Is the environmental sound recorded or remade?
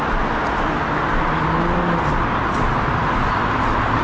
recorded